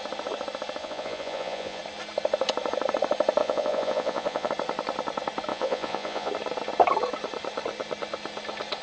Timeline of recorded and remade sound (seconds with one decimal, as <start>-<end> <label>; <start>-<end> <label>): 0.0-0.8 recorded; 0.8-1.8 remade; 1.8-3.4 recorded; 3.4-4.5 remade; 4.5-5.5 recorded; 5.5-6.3 remade; 6.3-8.8 recorded